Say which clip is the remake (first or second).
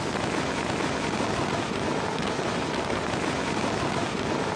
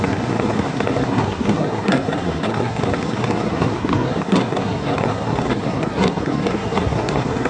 second